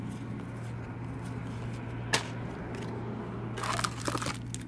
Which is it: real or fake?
real